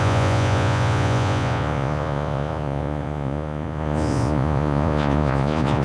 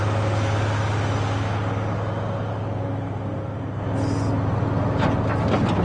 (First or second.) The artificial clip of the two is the first